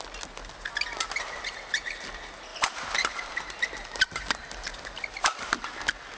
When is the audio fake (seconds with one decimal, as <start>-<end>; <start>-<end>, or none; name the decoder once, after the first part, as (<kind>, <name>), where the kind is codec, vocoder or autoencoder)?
2.5-4.8 (vocoder, BigVGAN v2)

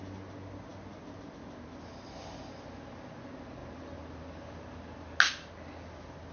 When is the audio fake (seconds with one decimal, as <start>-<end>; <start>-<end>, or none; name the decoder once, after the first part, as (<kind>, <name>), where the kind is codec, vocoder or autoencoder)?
none

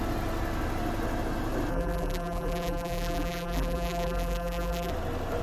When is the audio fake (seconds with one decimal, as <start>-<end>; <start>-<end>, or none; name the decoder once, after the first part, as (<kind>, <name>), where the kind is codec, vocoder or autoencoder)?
1.7-4.9 (vocoder, BigVGAN v2)

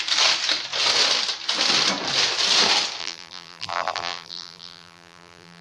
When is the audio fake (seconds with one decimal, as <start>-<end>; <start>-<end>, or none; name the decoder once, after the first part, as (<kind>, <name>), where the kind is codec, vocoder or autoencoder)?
3.0-5.6 (vocoder, BigVGAN v2)

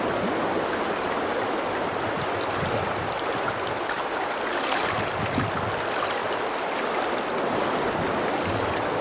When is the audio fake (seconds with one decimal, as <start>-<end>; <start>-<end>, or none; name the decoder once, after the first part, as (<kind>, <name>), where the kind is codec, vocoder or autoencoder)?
none

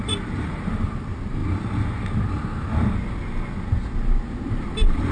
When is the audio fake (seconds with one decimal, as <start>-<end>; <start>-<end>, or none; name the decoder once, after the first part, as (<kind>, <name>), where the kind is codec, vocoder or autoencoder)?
0.0-1.4 (vocoder, BigVGAN v2); 4.5-5.1

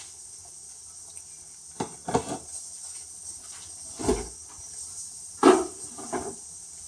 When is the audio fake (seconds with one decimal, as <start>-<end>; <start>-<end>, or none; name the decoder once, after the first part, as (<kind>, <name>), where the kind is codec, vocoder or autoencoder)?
5.2-5.9 (vocoder, BigVGAN v2)

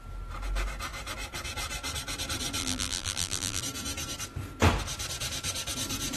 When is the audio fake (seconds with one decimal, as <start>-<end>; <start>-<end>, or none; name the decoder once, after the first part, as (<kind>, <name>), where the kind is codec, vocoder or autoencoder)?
2.6-3.6 (vocoder, BigVGAN v2)